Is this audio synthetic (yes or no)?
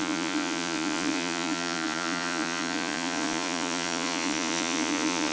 yes